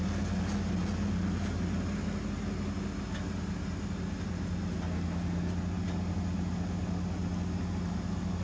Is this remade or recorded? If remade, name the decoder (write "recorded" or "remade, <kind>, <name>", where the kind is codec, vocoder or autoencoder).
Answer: recorded